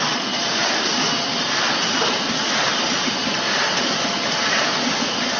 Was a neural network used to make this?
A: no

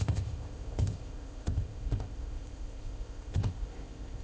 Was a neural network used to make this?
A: yes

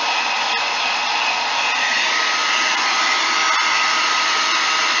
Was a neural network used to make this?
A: no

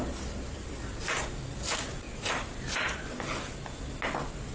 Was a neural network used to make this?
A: no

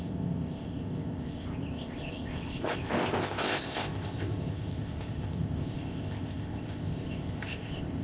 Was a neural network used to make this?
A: yes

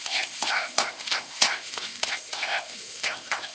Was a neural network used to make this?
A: yes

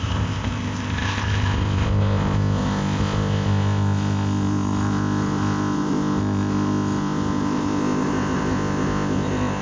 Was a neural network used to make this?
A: yes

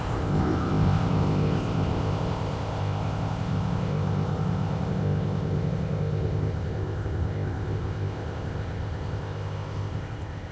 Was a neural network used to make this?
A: yes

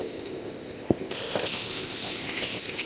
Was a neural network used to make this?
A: yes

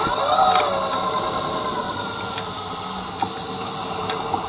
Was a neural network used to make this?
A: no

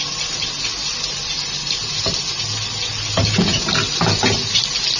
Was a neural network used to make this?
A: no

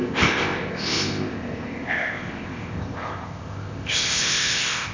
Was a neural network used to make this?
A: yes